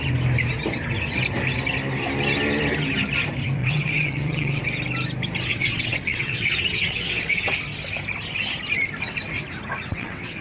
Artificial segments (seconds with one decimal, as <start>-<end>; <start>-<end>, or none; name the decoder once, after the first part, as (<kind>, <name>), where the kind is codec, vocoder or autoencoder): 3.6-4.6 (vocoder, WaveNeXt); 5.5-7.5; 9.9-10.4